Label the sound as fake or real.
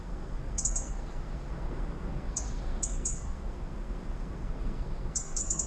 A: fake